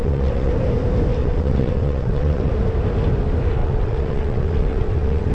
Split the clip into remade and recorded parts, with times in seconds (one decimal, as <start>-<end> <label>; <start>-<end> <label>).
0.0-0.5 remade; 0.5-1.2 recorded; 1.2-2.5 remade; 2.5-3.6 recorded; 3.6-5.3 remade